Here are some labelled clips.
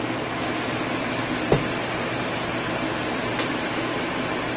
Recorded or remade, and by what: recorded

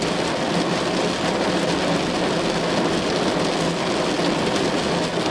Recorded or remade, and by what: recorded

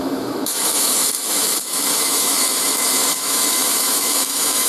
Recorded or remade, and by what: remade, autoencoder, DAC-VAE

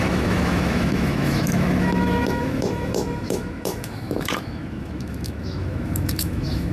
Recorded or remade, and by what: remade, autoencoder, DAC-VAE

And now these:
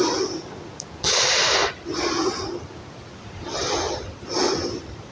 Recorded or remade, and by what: recorded